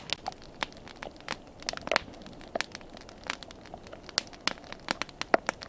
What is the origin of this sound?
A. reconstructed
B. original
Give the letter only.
B